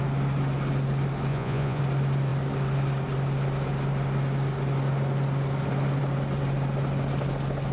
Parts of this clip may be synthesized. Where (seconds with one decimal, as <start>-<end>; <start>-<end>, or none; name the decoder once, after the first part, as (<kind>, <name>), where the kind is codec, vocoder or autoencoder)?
1.3-1.8 (vocoder, Vocos)